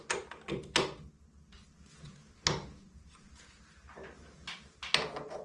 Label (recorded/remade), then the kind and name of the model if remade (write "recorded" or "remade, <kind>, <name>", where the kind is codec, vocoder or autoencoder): recorded